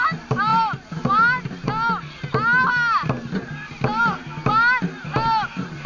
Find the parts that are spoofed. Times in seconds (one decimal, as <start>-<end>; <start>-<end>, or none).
none

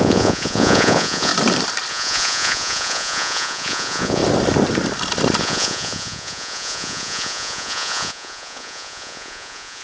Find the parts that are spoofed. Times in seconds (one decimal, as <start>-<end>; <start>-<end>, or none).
0.0-1.3; 1.9-4.2; 5.4-9.8

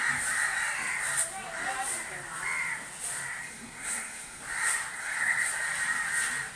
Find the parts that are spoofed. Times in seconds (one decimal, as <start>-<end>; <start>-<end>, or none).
3.4-4.4; 4.9-5.5

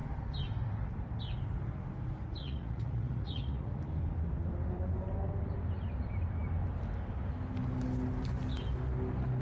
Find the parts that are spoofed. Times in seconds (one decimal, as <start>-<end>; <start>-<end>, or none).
2.4-3.8